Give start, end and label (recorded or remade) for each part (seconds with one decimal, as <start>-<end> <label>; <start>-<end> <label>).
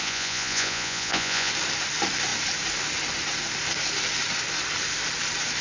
0.0-1.5 remade; 1.5-5.6 recorded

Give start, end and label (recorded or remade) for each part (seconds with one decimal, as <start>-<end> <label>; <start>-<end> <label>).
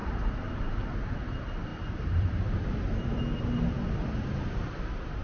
0.0-0.6 remade; 0.6-1.7 recorded; 1.7-3.2 remade; 3.2-5.2 recorded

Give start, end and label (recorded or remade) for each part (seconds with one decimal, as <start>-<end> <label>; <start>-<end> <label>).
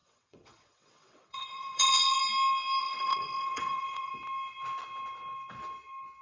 0.0-2.2 remade; 2.2-2.8 recorded; 2.8-4.1 remade; 4.1-6.2 recorded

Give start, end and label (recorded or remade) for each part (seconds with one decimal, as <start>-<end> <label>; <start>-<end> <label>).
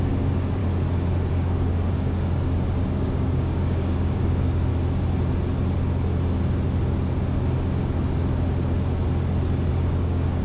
0.0-0.6 remade; 0.6-1.3 recorded; 1.3-4.7 remade; 4.7-9.7 recorded; 9.7-10.4 remade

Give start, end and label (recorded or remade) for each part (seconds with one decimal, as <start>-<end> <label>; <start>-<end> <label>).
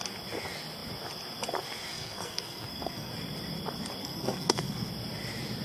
0.0-1.9 recorded; 1.9-3.1 remade; 3.1-4.0 recorded; 4.0-4.9 remade; 4.9-5.6 recorded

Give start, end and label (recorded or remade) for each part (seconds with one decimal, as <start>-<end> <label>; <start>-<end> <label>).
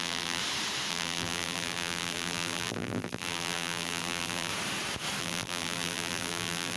0.0-0.4 remade; 0.4-0.9 recorded; 0.9-4.5 remade; 4.5-5.2 recorded; 5.2-6.8 remade